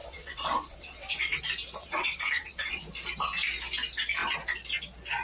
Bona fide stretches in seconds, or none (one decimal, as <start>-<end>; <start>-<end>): 1.4-1.8; 2.8-5.2